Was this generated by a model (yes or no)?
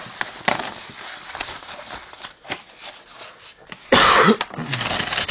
no